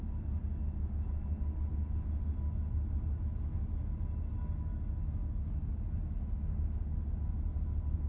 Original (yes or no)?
yes